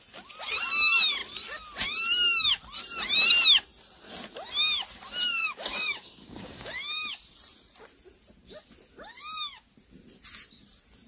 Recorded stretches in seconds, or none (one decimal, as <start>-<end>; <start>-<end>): 0.0-5.4; 6.7-11.1